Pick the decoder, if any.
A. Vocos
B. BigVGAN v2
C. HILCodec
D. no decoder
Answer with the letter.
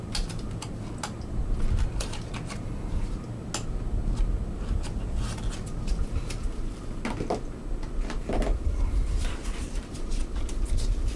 D